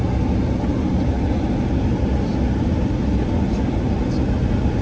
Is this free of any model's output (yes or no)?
yes